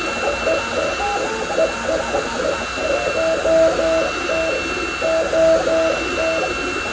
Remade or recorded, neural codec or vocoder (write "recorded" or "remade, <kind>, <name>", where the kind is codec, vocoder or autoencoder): recorded